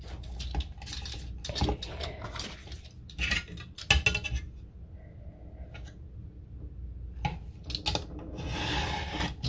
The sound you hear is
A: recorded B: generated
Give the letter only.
A